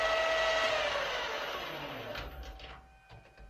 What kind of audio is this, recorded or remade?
recorded